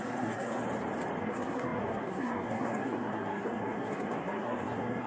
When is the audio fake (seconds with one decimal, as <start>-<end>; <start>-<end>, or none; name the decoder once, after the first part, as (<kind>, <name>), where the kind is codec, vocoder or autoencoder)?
0.0-0.6 (codec, SNAC); 1.2-5.1